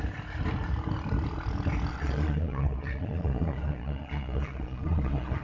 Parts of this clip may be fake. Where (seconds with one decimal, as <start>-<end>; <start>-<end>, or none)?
1.9-5.4